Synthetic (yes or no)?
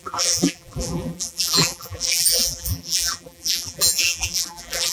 yes